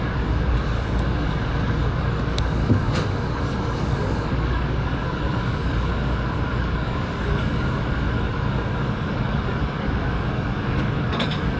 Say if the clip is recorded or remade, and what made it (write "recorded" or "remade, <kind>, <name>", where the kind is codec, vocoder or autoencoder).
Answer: remade, codec, DAC